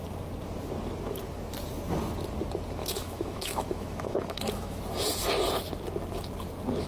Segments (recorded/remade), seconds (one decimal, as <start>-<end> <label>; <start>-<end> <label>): 0.0-2.8 recorded; 2.8-4.8 remade; 4.8-6.9 recorded